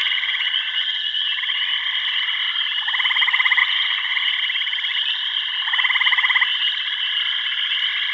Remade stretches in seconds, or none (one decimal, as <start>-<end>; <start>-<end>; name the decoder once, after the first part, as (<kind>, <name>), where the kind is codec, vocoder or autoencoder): 0.0-1.4 (vocoder, Vocos); 3.6-4.1